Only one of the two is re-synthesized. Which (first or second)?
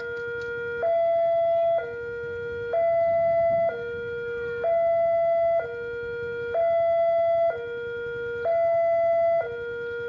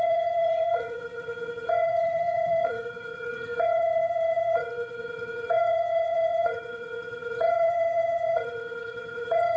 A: second